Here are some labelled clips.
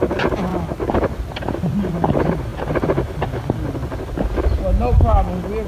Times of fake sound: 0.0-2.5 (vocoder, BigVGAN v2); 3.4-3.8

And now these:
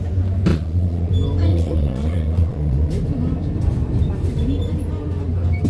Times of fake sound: 0.5-1.1 (vocoder, Vocos); 1.5-2.9

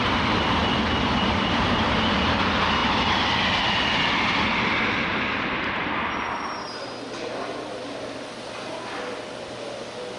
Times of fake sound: none

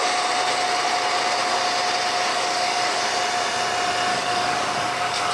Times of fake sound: 2.3-3.0 (codec, DAC); 4.1-5.3

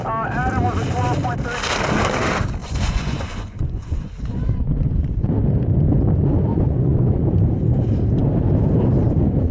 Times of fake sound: 2.6-5.3 (vocoder, Vocos); 6.5-7.2

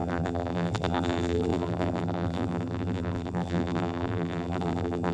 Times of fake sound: 0.0-5.1 (vocoder, BigVGAN v2)

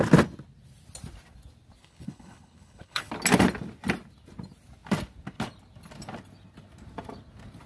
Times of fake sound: 1.8-3.1 (codec, HILCodec)

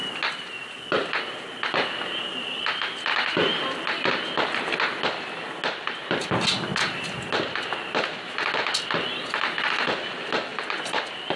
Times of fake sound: 10.5-11.0 (vocoder, Vocos)